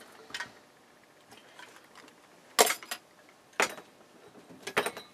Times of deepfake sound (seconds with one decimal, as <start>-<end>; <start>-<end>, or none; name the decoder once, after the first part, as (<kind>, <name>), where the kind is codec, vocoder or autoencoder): none